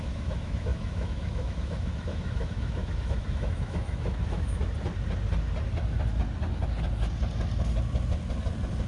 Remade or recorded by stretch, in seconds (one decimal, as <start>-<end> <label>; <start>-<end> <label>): 0.0-4.6 remade; 4.6-8.9 recorded